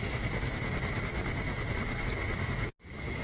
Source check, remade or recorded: recorded